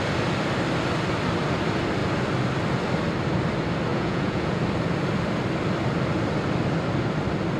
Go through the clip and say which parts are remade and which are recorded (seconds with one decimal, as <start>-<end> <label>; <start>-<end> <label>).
0.0-3.9 recorded; 3.9-4.6 remade; 4.6-7.6 recorded